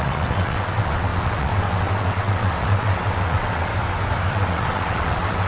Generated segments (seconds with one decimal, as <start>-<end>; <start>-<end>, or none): 0.0-3.7; 4.3-5.5